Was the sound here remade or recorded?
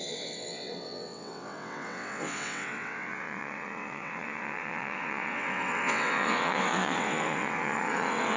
remade